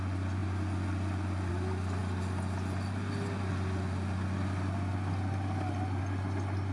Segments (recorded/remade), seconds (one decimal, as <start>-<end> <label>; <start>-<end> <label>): 0.0-6.7 recorded